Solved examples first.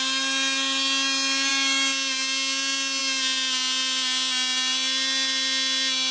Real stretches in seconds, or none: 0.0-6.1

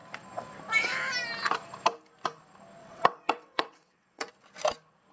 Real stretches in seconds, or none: 0.0-2.8; 4.3-5.1